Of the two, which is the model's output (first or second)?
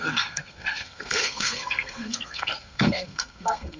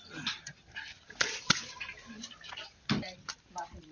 first